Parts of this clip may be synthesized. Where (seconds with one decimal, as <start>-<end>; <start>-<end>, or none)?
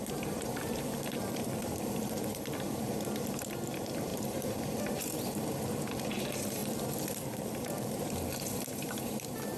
0.0-6.6; 7.3-9.6